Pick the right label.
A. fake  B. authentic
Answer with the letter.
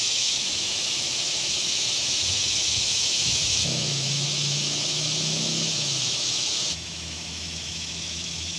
A